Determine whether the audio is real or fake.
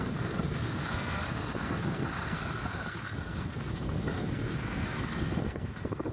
fake